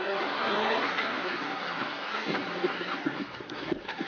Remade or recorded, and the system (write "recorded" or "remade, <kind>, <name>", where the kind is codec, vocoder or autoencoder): remade, codec, SNAC